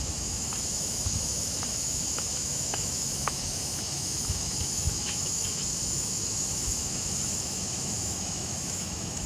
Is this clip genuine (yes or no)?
no